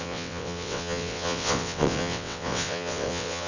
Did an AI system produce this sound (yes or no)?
yes